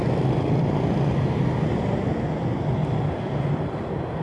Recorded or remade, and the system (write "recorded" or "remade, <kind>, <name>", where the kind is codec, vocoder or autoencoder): recorded